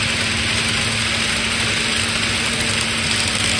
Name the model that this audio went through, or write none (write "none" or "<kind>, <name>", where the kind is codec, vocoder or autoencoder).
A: none